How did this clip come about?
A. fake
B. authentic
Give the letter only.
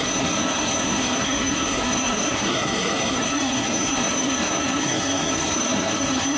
A